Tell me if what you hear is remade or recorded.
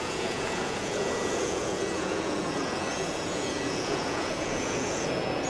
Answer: remade